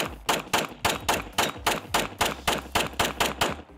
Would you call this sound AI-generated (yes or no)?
no